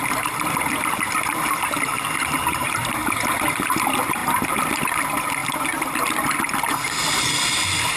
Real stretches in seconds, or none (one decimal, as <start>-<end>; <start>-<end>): 0.0-8.0